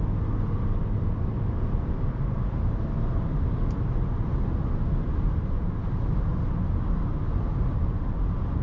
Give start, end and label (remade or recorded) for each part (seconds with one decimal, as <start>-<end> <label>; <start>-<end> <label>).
0.0-8.6 recorded